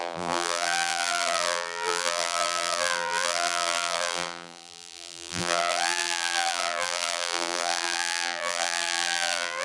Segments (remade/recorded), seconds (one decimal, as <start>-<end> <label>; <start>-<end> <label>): 0.0-9.6 remade